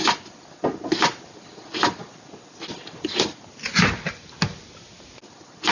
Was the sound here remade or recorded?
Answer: recorded